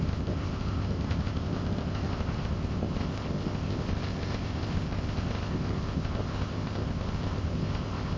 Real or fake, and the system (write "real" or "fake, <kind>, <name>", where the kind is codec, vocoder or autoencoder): fake, codec, ZipCodec